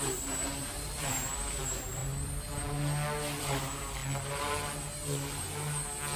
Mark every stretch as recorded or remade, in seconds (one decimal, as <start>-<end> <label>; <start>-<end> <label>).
0.0-2.0 remade; 2.0-3.4 recorded; 3.4-4.0 remade; 4.0-6.2 recorded